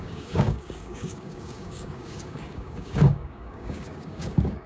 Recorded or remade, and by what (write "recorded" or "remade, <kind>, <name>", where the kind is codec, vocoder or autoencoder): remade, codec, DAC